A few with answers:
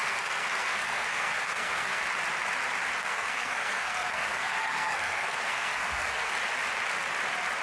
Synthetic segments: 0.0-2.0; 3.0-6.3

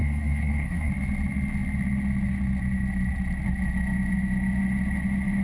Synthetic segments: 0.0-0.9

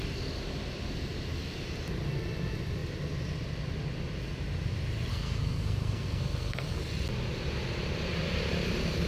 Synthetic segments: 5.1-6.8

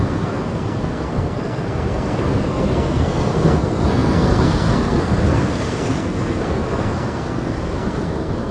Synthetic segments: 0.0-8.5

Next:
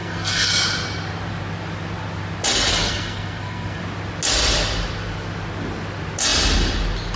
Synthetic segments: 0.0-0.5; 2.7-3.8

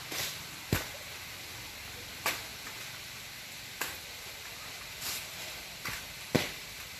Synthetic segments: none